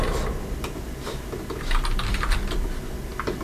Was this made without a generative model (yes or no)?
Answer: yes